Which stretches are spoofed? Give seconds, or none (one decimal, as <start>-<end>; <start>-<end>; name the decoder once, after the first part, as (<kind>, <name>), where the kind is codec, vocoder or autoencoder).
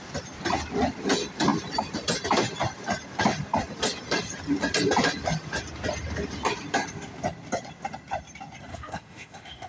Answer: 8.7-9.7 (autoencoder, DAC-VAE)